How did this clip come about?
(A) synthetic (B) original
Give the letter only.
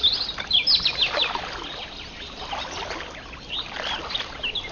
B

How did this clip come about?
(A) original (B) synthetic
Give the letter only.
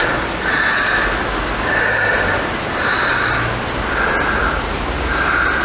A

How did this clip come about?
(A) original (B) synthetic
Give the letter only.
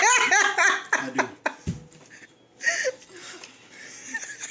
A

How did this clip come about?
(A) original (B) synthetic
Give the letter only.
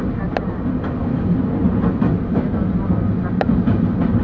A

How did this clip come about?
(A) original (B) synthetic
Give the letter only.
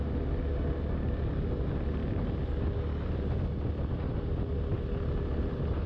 A